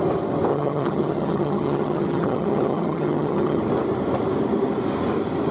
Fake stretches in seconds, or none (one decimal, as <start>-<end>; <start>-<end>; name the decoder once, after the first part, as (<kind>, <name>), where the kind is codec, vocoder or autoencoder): 0.5-3.6 (vocoder, HiFi-GAN)